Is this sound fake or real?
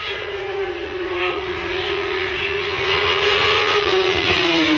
fake